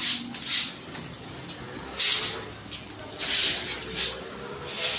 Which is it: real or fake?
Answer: real